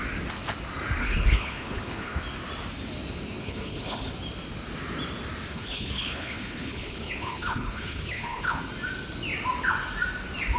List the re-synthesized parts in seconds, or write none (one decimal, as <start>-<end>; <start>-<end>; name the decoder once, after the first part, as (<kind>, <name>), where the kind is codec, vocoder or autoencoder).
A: 1.0-2.2 (codec, HILCodec); 3.4-4.1; 5.5-8.6